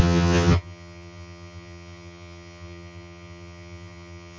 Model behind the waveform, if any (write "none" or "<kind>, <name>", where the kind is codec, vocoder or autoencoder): vocoder, HiFi-GAN